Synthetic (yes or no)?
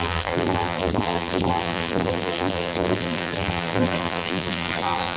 yes